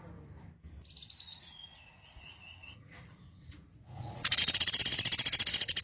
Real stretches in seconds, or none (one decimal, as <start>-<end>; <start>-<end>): 0.0-1.3; 4.8-5.8